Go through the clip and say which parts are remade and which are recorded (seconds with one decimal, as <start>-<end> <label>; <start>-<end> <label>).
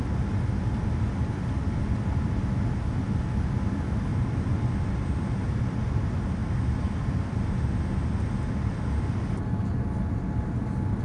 0.0-11.0 recorded